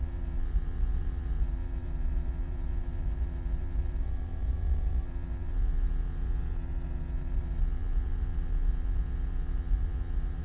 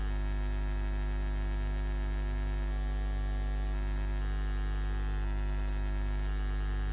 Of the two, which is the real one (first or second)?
second